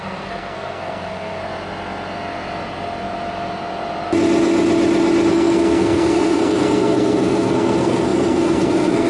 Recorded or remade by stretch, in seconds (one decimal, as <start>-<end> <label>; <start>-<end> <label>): 0.0-1.4 remade; 1.4-5.3 recorded; 5.3-9.1 remade